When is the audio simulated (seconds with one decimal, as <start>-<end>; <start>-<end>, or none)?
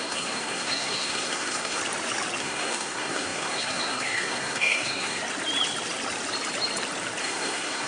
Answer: 0.0-1.8; 2.4-5.2; 7.2-7.9